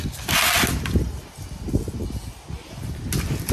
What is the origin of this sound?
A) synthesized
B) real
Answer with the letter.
B